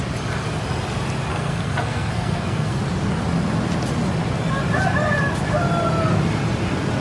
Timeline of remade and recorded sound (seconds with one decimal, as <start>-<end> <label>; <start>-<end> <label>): 0.0-1.3 recorded; 1.3-2.8 remade; 2.8-7.0 recorded